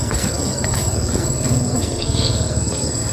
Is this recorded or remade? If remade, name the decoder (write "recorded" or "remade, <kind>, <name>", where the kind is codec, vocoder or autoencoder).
remade, codec, SNAC